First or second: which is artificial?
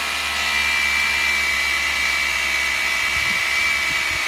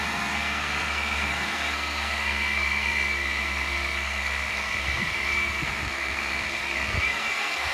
second